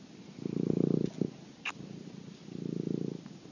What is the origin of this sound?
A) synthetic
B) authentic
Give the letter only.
B